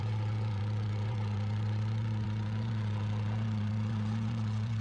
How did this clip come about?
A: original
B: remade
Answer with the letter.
B